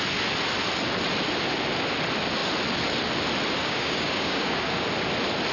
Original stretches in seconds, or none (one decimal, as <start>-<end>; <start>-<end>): 0.0-3.6; 4.9-5.5